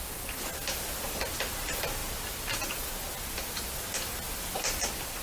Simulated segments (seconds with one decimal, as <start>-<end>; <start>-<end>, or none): none